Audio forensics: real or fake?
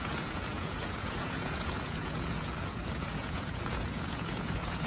fake